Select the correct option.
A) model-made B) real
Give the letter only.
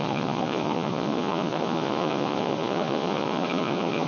A